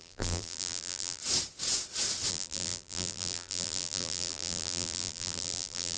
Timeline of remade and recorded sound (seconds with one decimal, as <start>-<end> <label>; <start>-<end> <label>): 0.0-1.2 remade; 1.2-2.3 recorded; 2.3-6.0 remade